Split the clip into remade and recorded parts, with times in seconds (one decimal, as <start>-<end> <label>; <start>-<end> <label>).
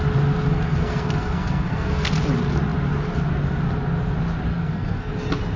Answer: 0.0-0.5 recorded; 0.5-2.1 remade; 2.1-4.5 recorded; 4.5-5.1 remade; 5.1-5.6 recorded